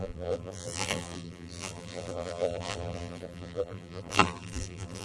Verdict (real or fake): fake